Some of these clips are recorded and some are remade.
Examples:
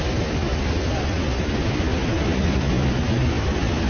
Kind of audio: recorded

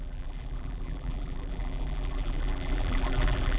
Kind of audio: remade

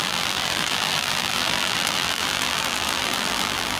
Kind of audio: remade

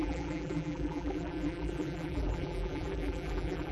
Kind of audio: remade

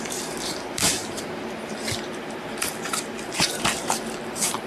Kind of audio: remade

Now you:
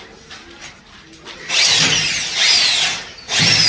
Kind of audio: recorded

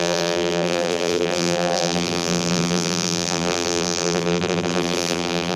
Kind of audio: remade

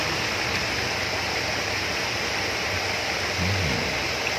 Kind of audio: recorded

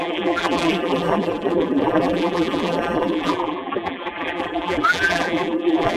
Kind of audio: remade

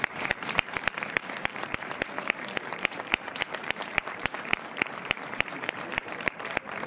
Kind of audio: remade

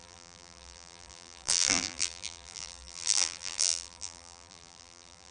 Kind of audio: remade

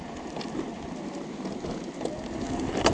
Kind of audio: recorded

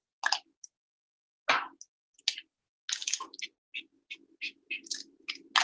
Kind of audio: recorded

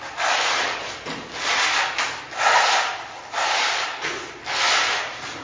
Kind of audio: remade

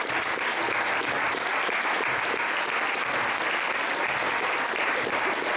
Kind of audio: recorded